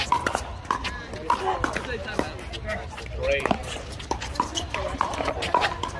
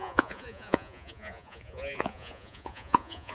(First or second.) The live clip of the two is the first